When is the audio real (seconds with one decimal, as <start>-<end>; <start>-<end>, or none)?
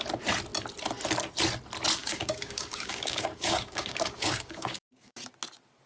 0.0-2.0; 5.2-5.9